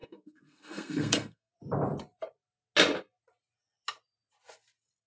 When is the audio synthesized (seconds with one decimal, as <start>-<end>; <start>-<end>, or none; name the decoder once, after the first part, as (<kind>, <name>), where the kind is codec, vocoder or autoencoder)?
0.0-1.5 (codec, SNAC)